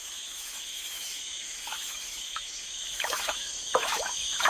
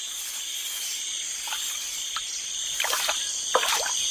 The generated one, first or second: first